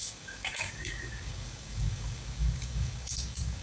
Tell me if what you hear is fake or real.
fake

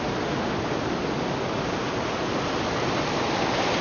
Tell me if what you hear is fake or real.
real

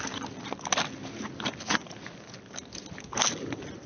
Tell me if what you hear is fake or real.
real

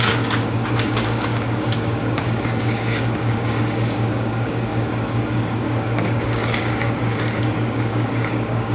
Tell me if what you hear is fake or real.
fake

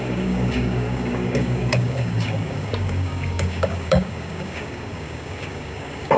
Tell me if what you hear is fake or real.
fake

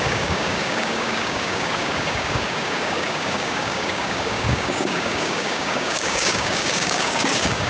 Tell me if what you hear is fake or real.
fake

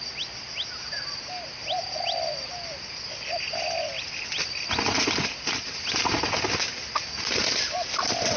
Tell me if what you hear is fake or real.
real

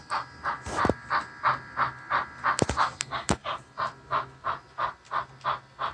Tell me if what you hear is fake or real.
real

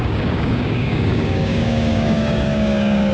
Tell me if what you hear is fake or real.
fake